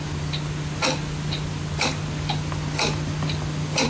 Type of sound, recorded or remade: recorded